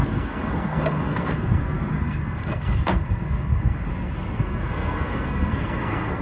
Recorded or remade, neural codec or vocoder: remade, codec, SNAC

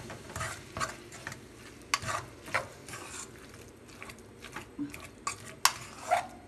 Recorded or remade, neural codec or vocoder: recorded